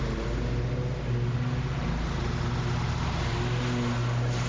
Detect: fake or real real